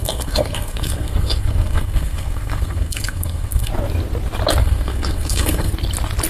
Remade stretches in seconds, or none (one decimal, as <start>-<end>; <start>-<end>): 0.0-3.7; 4.6-5.7